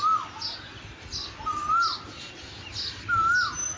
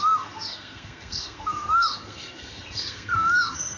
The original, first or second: first